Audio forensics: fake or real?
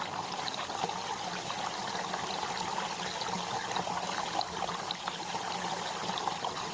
real